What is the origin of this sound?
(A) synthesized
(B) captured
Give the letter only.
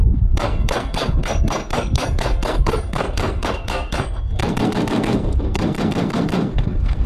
A